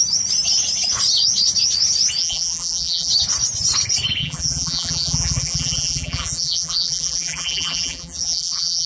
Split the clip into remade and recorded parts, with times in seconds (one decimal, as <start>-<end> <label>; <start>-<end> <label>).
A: 0.0-2.2 recorded; 2.2-3.1 remade; 3.1-4.2 recorded; 4.2-8.9 remade